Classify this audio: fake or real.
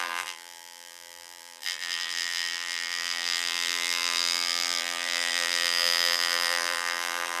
fake